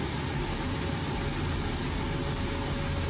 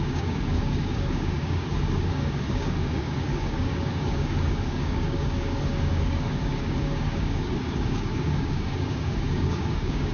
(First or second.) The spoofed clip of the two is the second